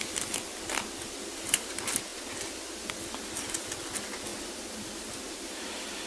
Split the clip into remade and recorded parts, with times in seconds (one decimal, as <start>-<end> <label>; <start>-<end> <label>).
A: 0.0-6.1 recorded